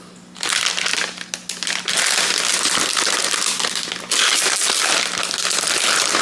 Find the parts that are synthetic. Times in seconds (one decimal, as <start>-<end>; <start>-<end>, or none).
none